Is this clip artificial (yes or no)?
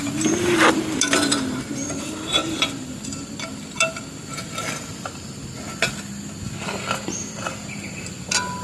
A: no